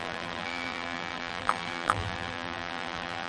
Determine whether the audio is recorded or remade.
remade